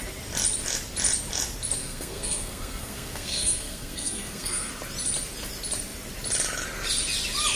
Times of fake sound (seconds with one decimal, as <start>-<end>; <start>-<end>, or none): 1.8-4.7